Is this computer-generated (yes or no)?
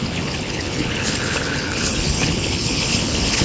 yes